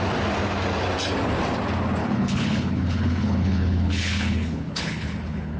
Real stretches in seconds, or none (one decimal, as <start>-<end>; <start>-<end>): 0.0-2.0